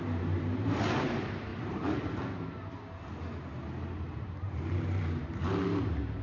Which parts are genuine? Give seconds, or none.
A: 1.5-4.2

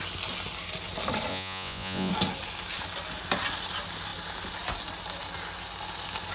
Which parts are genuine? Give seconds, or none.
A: 0.0-1.3; 2.1-6.3